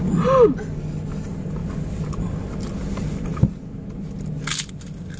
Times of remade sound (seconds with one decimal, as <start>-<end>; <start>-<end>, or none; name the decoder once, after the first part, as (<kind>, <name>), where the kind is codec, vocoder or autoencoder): none